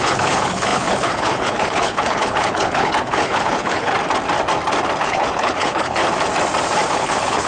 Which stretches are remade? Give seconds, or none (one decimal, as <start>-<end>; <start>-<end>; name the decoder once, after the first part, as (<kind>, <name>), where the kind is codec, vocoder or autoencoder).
0.0-3.9 (codec, HILCodec); 5.0-6.0; 6.9-7.5